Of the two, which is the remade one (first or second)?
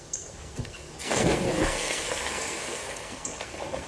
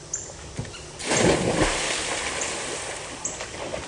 first